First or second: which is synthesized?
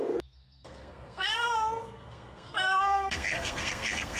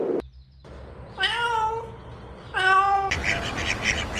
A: first